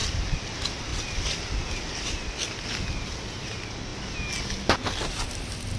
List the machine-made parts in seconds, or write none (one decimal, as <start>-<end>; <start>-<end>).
0.0-0.5